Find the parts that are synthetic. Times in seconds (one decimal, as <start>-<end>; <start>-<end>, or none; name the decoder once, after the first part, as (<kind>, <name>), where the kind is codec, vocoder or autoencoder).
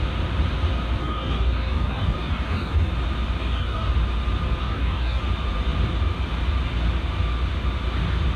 1.0-2.9 (codec, DAC); 3.4-3.9; 4.6-5.2